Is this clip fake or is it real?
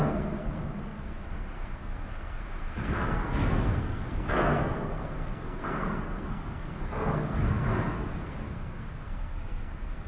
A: fake